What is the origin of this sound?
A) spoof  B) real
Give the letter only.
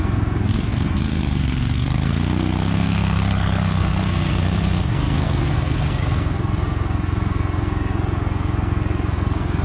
A